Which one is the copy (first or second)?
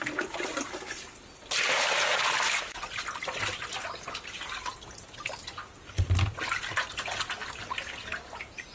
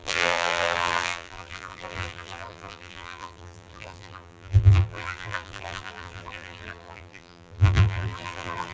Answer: second